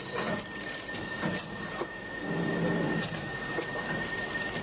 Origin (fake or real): real